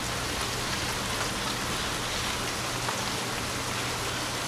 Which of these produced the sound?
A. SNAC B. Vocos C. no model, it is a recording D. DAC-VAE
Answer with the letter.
C